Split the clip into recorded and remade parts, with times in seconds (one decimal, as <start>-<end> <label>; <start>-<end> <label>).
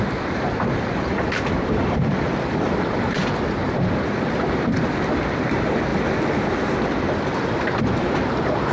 0.0-3.2 remade; 3.2-3.7 recorded; 3.7-5.9 remade; 5.9-7.3 recorded; 7.3-8.7 remade